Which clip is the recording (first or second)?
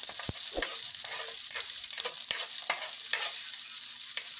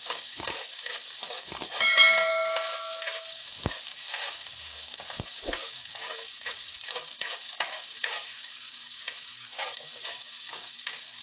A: first